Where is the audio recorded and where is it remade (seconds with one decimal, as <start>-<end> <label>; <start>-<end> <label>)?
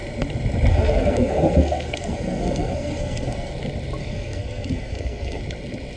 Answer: 0.0-0.7 recorded; 0.7-3.5 remade; 3.5-4.0 recorded; 4.0-5.4 remade; 5.4-6.0 recorded